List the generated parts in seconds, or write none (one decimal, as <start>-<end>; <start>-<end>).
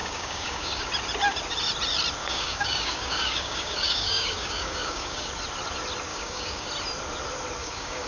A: 0.0-0.9; 2.2-5.3; 6.1-6.7; 7.6-8.1